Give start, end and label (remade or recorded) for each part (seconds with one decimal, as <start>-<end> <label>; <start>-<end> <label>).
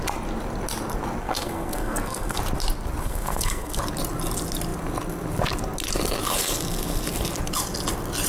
0.0-1.2 recorded; 1.2-2.4 remade; 2.4-3.0 recorded; 3.0-3.8 remade; 3.8-8.3 recorded